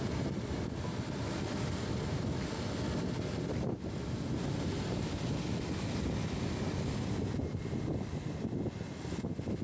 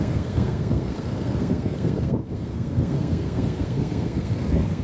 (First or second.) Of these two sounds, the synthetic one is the second